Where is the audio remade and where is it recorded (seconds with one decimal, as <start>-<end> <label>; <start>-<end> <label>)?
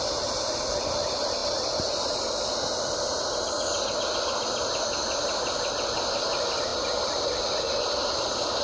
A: 0.0-8.6 recorded